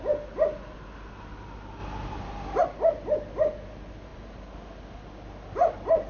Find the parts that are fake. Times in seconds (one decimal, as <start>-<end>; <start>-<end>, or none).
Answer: none